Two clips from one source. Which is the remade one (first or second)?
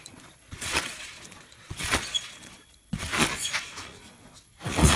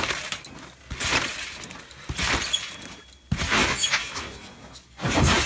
first